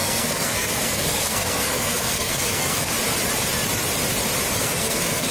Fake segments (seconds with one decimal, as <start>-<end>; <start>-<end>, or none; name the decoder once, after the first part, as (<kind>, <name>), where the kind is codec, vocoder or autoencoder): 0.0-2.9 (codec, SNAC); 4.6-5.3